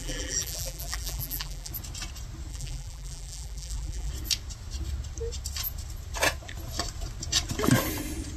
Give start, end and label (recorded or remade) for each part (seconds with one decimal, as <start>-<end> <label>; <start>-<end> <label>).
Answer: 0.0-1.7 remade; 1.7-2.5 recorded; 2.5-4.1 remade; 4.1-8.4 recorded